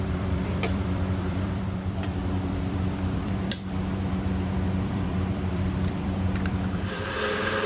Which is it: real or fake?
fake